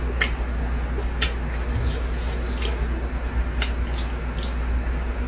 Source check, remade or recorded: recorded